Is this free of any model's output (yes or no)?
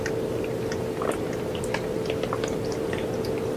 yes